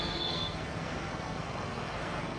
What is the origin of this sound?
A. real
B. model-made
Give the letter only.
B